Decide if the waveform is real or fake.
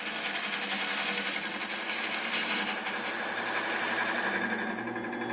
real